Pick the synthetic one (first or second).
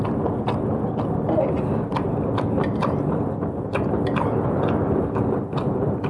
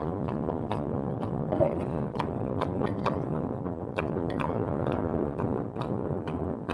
second